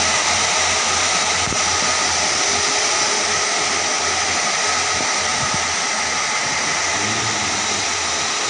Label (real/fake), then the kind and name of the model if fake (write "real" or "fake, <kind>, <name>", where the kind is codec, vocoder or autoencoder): real